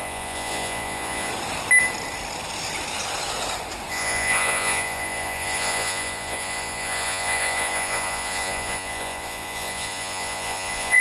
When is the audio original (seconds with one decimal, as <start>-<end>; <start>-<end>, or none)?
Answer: 1.3-3.9